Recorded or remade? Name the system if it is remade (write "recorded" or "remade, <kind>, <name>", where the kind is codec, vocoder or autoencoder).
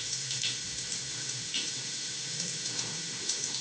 remade, autoencoder, DAC-VAE